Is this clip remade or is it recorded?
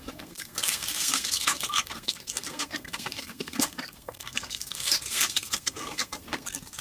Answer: remade